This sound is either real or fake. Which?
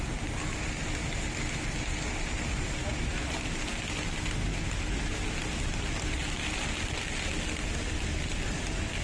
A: real